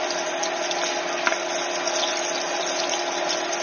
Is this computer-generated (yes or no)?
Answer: yes